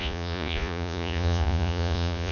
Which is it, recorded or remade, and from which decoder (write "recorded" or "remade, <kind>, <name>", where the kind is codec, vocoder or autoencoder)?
remade, vocoder, Vocos